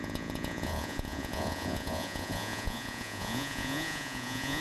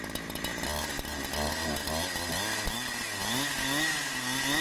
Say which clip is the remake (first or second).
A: first